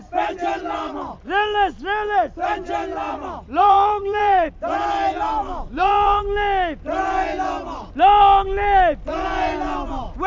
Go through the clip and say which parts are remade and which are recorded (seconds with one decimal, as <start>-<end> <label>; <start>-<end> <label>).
0.0-0.6 remade; 0.6-3.6 recorded; 3.6-6.2 remade; 6.2-10.3 recorded